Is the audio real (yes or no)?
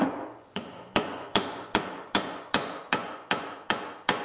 no